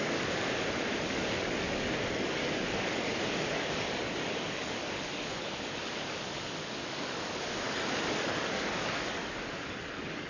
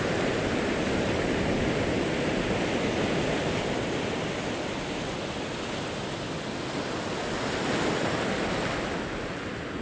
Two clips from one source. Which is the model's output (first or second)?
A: first